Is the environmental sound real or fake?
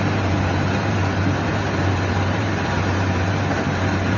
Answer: fake